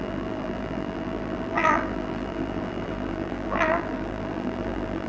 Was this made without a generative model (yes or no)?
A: no